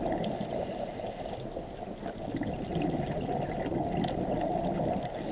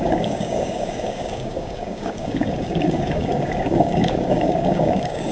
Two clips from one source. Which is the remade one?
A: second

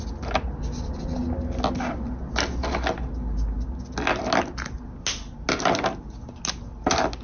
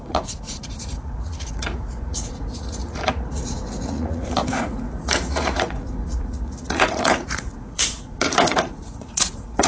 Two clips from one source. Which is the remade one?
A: second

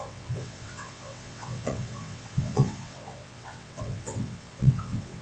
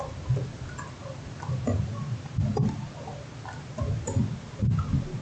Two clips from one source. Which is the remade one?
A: first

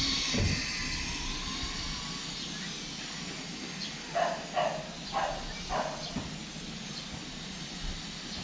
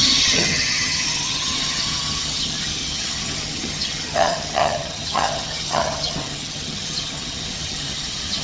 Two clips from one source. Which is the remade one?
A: second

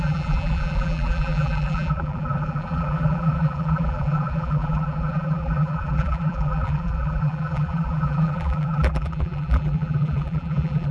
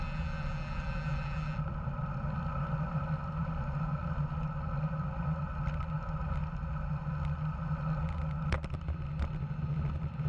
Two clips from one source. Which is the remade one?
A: first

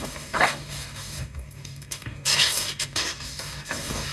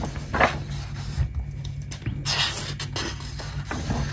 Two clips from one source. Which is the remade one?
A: first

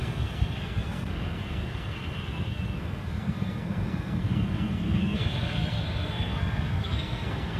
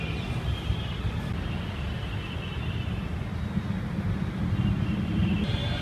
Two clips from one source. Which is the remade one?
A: first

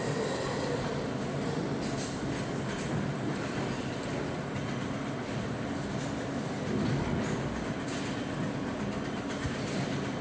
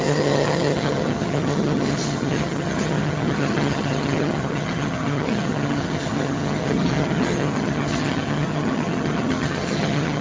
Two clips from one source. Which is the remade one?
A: second